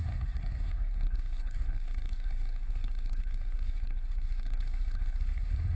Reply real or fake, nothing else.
fake